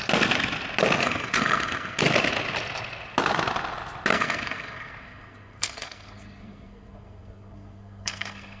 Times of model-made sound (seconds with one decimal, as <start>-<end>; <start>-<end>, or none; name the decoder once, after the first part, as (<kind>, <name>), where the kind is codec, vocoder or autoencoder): 1.0-2.0 (codec, SNAC); 4.1-8.6